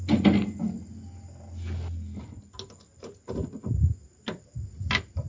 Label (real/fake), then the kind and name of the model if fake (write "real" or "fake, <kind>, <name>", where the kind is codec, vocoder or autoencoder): real